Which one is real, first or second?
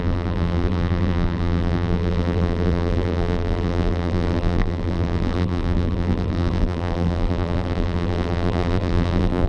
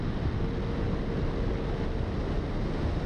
second